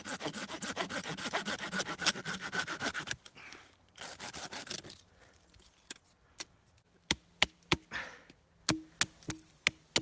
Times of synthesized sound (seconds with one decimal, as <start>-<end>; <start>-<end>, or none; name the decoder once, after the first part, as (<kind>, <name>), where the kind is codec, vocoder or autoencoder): none